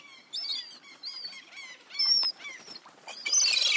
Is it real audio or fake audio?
fake